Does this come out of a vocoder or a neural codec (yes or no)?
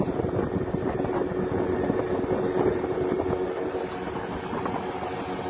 no